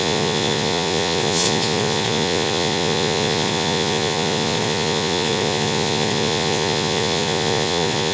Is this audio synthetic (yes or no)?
yes